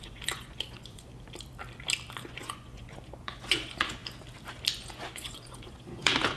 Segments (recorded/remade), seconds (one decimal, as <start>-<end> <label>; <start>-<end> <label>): 0.0-1.1 remade; 1.1-2.2 recorded; 2.2-4.0 remade; 4.0-4.7 recorded; 4.7-6.4 remade